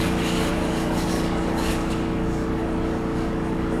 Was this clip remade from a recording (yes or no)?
yes